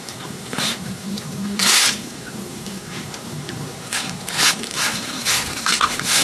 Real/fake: fake